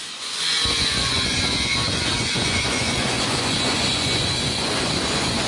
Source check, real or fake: fake